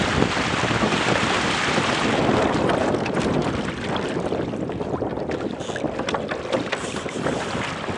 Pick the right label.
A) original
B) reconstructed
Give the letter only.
B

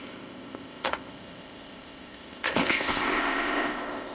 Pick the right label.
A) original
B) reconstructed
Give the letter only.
B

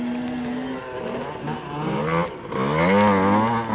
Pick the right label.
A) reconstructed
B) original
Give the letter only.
B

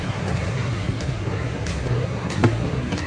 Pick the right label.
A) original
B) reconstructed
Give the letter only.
B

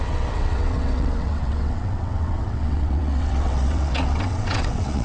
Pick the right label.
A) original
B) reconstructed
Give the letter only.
B